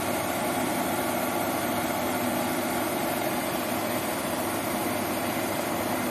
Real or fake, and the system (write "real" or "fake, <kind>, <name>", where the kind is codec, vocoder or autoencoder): real